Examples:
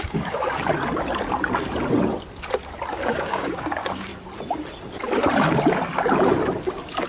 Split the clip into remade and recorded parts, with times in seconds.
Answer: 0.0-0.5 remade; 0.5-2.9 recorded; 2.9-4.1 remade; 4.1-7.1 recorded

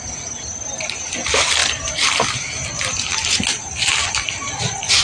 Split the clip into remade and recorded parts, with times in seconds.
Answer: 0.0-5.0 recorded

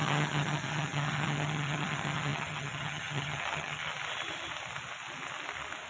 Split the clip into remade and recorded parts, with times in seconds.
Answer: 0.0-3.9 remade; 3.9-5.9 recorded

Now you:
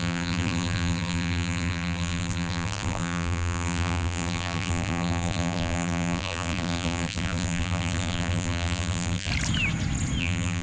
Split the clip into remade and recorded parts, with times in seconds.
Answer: 0.0-9.3 remade; 9.3-10.2 recorded; 10.2-10.6 remade